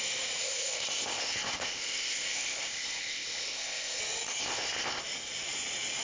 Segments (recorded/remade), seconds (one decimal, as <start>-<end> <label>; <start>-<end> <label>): 0.0-0.4 recorded; 0.4-4.0 remade; 4.0-4.4 recorded; 4.4-5.0 remade; 5.0-6.0 recorded